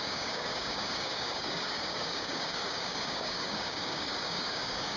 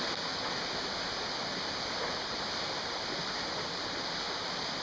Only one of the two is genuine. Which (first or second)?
second